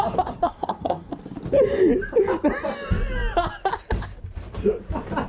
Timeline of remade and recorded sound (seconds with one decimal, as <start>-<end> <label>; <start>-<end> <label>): 0.0-0.4 recorded; 0.4-1.1 remade; 1.1-5.3 recorded